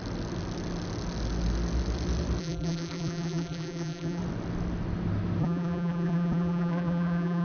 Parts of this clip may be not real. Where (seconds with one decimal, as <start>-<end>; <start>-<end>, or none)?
2.4-4.2; 5.4-7.4